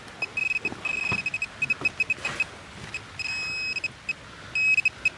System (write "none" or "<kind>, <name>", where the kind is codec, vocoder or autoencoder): none